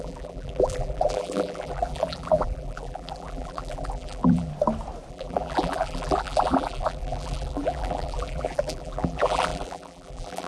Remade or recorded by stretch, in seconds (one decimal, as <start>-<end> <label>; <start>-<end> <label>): 0.0-4.5 remade; 4.5-5.1 recorded; 5.1-10.5 remade